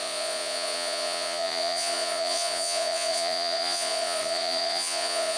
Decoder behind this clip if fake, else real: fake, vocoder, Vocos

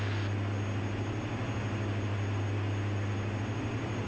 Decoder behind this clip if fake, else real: real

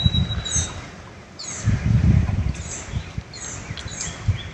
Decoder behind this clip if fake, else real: real